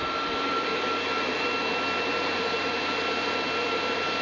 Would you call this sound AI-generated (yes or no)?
no